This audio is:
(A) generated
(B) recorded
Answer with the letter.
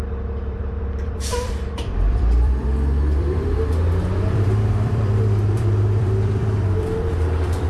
A